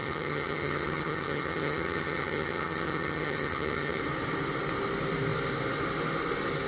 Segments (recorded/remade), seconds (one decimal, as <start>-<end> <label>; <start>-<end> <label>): 0.0-4.0 remade; 4.0-6.7 recorded

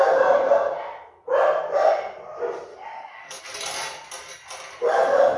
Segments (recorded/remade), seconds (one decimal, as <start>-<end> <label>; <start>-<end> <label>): 0.0-2.7 recorded; 2.7-3.4 remade; 3.4-4.8 recorded; 4.8-5.4 remade